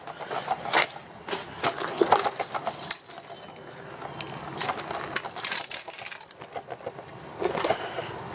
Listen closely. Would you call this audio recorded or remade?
recorded